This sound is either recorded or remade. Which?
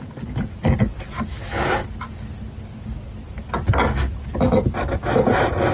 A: recorded